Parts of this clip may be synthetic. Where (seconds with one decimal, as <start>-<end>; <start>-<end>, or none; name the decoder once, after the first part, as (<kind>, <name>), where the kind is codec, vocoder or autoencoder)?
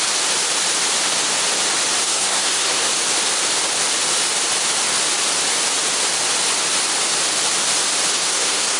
2.0-2.9 (codec, SNAC); 8.1-8.8